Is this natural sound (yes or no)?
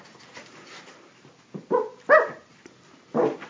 yes